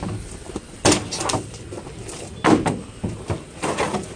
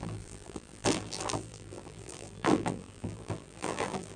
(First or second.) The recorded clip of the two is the first